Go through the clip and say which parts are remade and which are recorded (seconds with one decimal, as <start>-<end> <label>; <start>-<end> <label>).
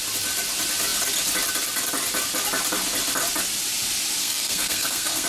0.0-4.2 recorded; 4.2-5.3 remade